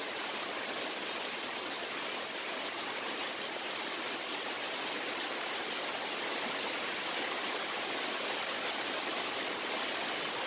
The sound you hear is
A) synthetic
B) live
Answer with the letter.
B